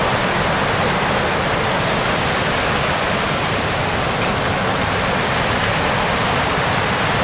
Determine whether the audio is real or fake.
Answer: real